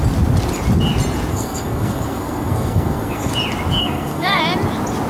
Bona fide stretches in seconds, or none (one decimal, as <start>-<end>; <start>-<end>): 0.0-1.3; 3.3-3.8; 4.4-5.1